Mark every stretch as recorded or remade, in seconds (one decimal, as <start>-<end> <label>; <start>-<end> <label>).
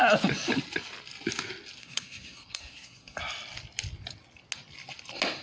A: 0.0-1.8 recorded; 1.8-3.2 remade; 3.2-5.4 recorded